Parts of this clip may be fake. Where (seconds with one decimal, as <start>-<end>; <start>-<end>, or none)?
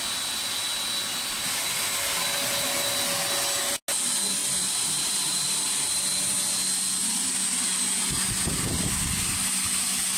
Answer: 4.4-6.0